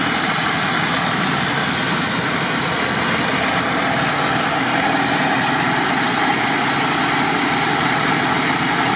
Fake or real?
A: real